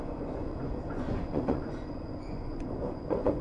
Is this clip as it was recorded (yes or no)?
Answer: no